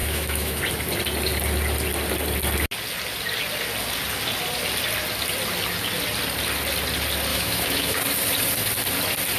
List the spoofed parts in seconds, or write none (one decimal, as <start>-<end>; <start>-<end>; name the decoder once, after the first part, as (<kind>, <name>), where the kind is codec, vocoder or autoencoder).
0.0-0.6 (autoencoder, DAC-VAE); 7.3-8.0